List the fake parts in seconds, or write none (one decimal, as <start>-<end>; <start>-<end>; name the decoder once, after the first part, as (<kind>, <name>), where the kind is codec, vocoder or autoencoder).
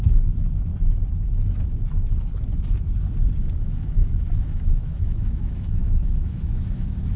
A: 0.0-0.7 (autoencoder, DAC-VAE); 3.5-7.2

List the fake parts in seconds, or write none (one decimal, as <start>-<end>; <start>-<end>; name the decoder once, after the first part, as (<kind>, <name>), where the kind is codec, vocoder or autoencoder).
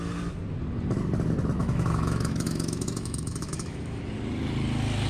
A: 1.6-4.0 (autoencoder, DAC-VAE)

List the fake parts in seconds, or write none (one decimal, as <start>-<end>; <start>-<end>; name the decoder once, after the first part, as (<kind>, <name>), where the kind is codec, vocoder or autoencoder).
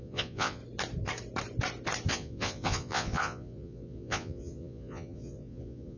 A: 0.0-0.6 (vocoder, Vocos); 2.1-6.0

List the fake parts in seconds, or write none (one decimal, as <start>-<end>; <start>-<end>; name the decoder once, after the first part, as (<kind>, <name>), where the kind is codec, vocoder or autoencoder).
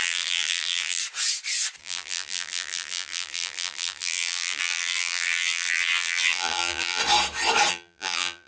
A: 0.0-1.0 (vocoder, BigVGAN v2); 1.8-7.0; 7.7-8.5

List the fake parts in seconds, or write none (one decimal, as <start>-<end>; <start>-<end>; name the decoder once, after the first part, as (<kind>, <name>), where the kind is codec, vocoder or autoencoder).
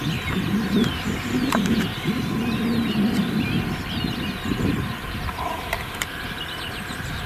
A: 0.0-0.9 (vocoder, BigVGAN v2); 5.0-7.3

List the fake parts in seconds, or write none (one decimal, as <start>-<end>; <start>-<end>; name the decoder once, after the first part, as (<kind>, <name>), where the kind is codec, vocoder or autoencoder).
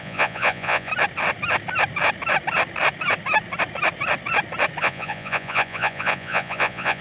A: 0.0-0.9 (vocoder, Vocos); 4.8-7.0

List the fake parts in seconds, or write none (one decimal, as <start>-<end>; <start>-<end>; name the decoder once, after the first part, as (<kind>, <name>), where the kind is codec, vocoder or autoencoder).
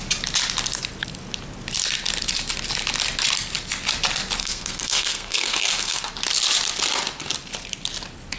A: 4.4-6.1 (codec, SNAC)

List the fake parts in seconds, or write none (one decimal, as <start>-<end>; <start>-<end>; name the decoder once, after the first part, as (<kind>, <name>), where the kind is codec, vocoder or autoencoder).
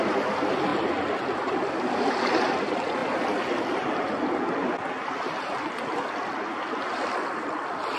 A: none